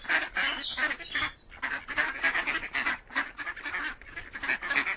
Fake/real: real